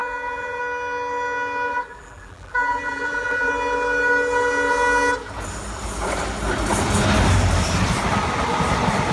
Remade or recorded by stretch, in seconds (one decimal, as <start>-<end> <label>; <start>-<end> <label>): 0.0-0.6 remade; 0.6-1.7 recorded; 1.7-3.5 remade; 3.5-9.1 recorded